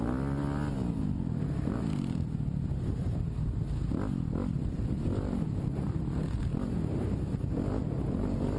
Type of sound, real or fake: real